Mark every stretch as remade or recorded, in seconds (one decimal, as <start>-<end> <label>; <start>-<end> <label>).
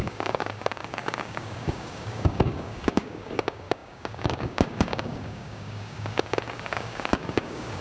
0.0-7.8 remade